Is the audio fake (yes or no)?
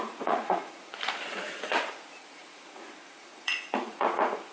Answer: yes